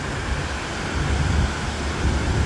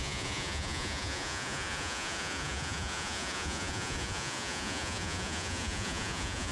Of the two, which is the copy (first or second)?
second